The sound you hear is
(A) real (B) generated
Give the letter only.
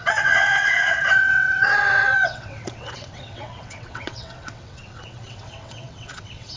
B